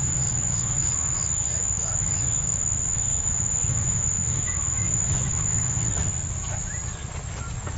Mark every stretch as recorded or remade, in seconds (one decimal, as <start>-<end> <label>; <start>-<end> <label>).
0.0-5.8 remade; 5.8-7.8 recorded